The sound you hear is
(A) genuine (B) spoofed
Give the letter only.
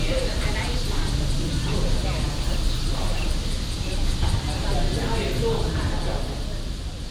A